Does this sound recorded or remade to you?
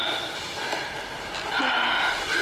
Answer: recorded